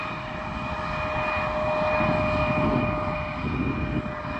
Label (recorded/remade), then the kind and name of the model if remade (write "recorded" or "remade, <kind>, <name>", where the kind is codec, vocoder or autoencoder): recorded